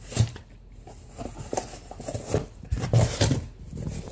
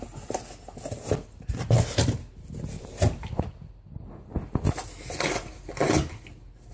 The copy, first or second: first